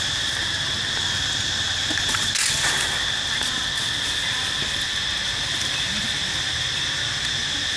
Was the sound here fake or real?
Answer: real